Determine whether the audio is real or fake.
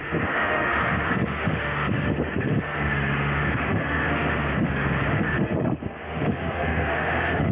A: fake